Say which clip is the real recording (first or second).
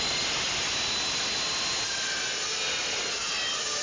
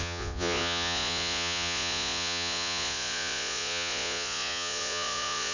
first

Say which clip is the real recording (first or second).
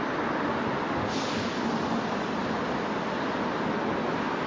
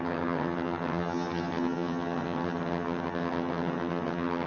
first